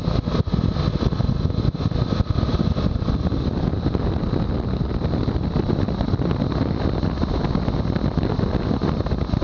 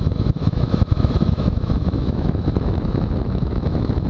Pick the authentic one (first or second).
first